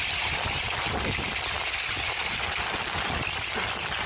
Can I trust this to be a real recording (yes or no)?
yes